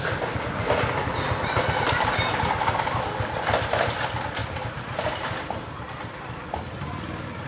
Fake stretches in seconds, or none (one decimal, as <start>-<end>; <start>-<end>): none